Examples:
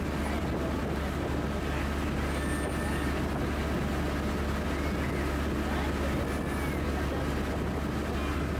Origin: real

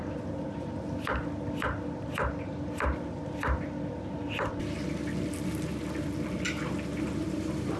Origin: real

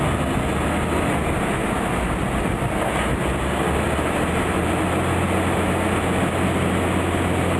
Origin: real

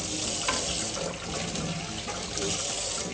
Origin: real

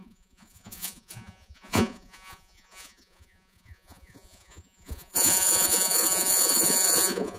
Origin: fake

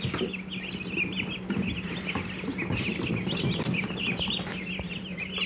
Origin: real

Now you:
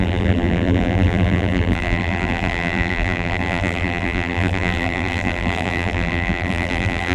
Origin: fake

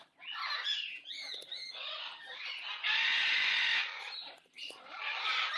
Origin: real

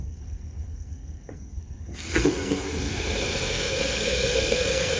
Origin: fake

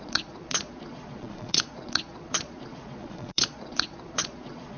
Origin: fake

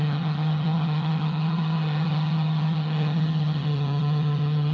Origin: fake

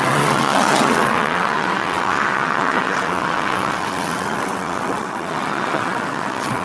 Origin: fake